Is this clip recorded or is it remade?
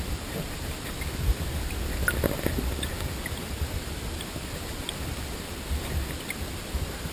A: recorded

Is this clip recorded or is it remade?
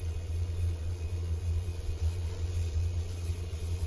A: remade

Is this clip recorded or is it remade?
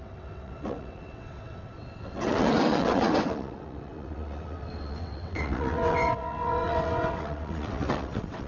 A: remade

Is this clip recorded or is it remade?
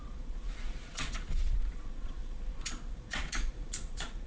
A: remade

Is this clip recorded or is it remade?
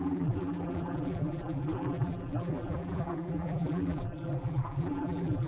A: remade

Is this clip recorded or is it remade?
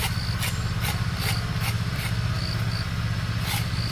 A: recorded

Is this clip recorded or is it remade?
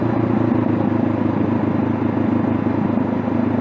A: recorded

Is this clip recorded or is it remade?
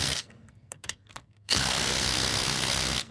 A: remade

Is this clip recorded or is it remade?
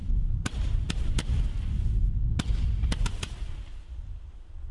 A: recorded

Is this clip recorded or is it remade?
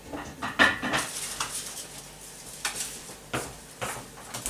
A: recorded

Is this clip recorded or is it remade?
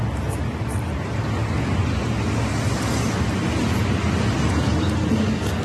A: recorded